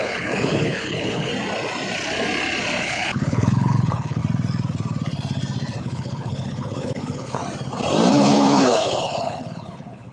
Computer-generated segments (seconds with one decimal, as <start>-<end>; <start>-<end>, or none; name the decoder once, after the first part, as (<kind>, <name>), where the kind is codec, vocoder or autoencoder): 0.0-1.3 (codec, HILCodec); 2.8-4.2; 5.8-7.4; 8.1-10.1